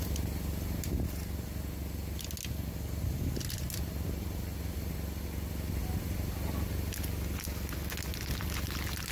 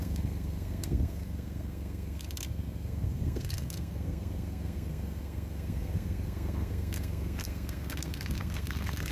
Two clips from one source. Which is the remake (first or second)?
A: second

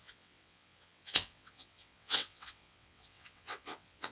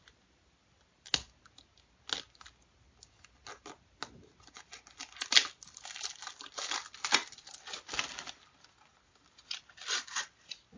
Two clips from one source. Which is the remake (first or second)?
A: first